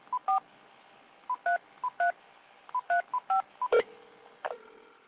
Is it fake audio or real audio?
real